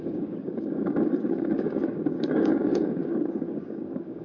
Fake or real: fake